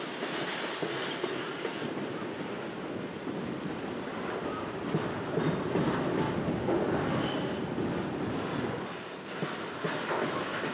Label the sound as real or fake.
real